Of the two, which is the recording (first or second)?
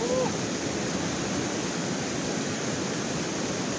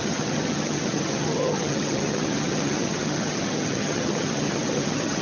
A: first